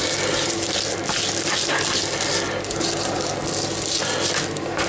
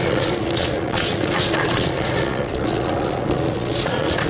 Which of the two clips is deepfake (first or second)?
second